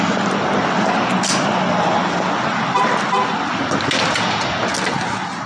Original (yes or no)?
yes